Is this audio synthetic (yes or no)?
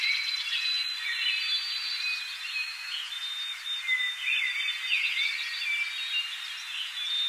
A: no